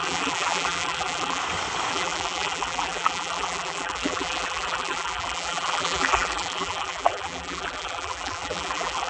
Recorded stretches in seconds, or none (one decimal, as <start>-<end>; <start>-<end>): 1.4-1.9